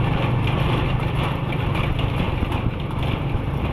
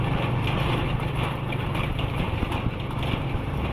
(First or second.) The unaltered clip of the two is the second